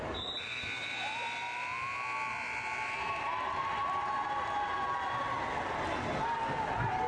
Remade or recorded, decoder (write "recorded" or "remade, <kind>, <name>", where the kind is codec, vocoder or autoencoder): recorded